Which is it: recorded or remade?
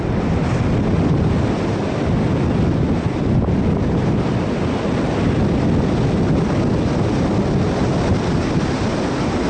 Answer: recorded